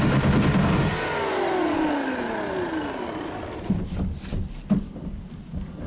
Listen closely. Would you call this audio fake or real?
real